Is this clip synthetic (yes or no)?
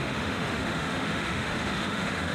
yes